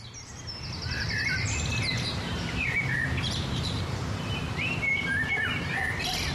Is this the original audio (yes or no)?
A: no